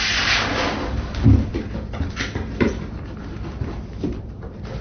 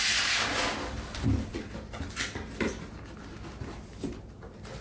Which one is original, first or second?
second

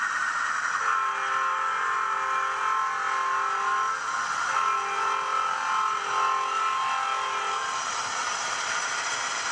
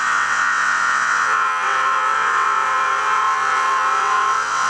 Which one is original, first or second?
first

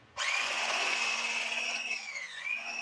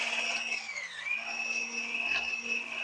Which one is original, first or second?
second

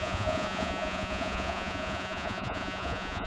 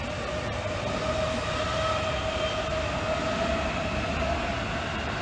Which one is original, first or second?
second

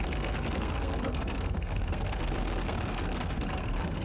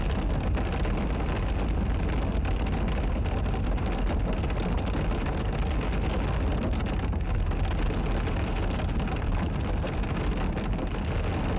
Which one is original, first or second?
second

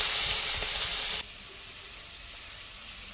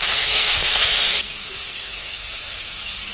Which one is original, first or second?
first